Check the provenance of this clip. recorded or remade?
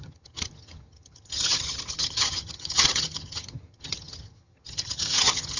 remade